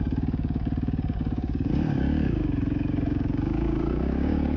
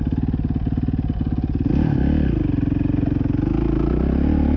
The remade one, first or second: first